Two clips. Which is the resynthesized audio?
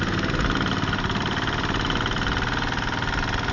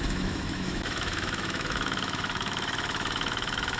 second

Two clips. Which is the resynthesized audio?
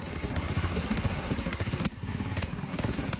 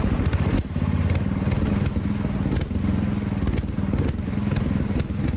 first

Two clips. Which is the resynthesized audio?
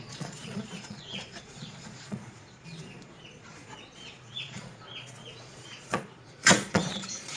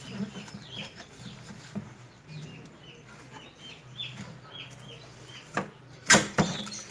first